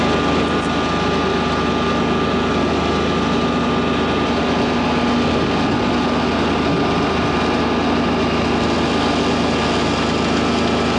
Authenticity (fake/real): real